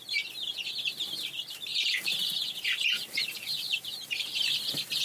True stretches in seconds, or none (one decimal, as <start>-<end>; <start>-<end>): 0.0-1.7; 4.6-5.0